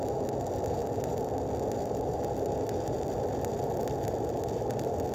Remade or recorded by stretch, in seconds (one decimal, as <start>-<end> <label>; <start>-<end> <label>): 0.0-5.1 recorded